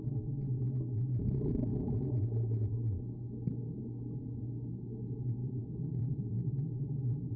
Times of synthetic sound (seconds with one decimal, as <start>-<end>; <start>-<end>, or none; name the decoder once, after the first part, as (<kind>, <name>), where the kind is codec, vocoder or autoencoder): 5.4-7.4 (vocoder, BigVGAN v2)